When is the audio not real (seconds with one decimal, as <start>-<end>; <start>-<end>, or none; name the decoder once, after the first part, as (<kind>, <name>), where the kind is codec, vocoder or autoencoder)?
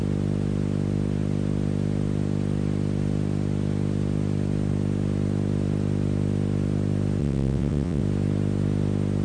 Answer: 7.2-8.0 (vocoder, WaveNeXt)